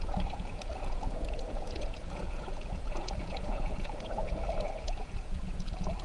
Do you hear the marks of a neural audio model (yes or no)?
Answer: yes